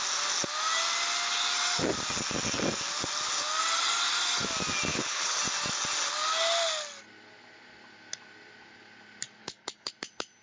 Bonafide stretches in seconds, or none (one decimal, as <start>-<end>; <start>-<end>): 0.0-4.9; 5.4-9.4; 9.9-10.4